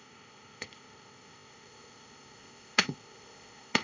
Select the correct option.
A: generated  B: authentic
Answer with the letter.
A